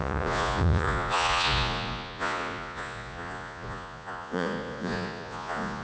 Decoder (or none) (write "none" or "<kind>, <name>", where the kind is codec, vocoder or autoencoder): vocoder, Vocos